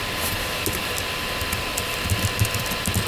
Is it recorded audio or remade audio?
recorded